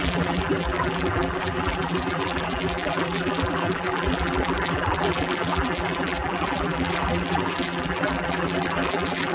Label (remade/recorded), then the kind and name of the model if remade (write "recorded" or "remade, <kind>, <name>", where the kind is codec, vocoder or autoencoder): remade, vocoder, BigVGAN v2